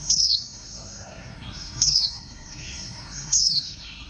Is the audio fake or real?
fake